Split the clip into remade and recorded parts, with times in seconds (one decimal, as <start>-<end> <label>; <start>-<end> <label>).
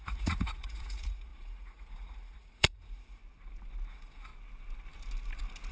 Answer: 0.0-3.2 remade; 3.2-3.9 recorded; 3.9-4.3 remade; 4.3-5.7 recorded